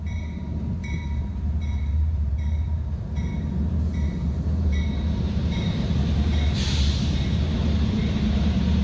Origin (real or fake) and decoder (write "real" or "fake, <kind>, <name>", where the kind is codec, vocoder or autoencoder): fake, vocoder, BigVGAN v2